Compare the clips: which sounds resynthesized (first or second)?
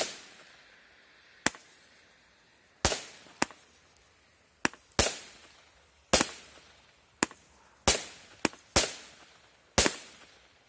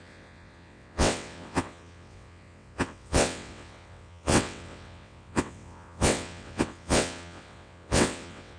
second